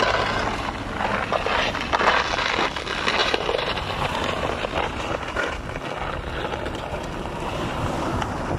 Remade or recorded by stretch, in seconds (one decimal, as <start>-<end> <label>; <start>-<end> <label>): 0.0-3.2 recorded; 3.2-5.6 remade; 5.6-8.6 recorded